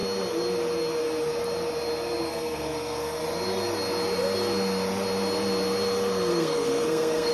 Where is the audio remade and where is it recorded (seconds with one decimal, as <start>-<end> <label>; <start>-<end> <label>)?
0.0-2.3 recorded; 2.3-3.2 remade; 3.2-6.3 recorded; 6.3-7.3 remade